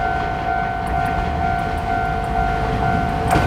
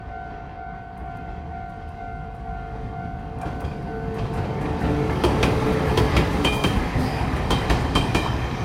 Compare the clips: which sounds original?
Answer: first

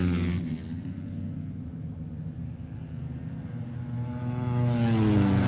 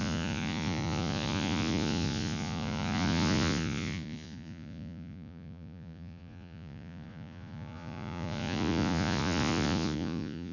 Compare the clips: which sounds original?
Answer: first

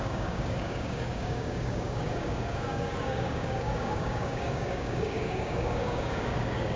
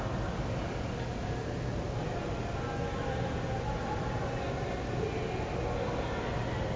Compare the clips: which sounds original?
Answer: second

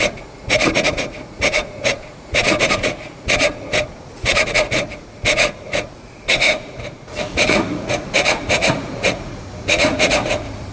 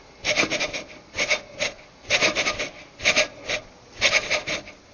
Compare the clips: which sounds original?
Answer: second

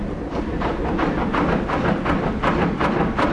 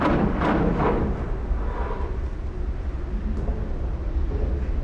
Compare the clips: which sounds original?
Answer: second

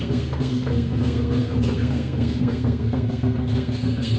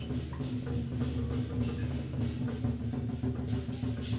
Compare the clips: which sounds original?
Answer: second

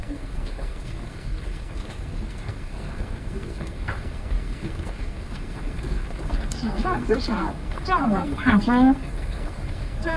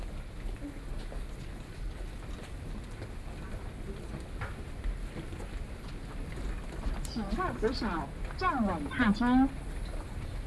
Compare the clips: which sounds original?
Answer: second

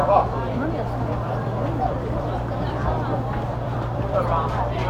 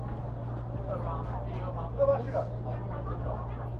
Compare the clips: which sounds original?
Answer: second